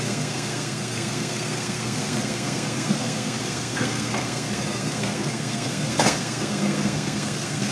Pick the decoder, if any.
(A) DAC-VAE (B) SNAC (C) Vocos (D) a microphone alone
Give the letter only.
B